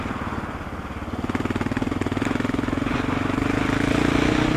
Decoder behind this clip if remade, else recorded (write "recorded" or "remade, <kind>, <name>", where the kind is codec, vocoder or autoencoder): recorded